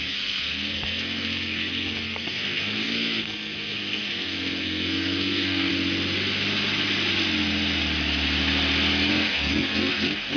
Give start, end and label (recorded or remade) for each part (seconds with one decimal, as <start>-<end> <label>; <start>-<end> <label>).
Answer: 0.0-5.7 remade; 5.7-9.1 recorded; 9.1-10.4 remade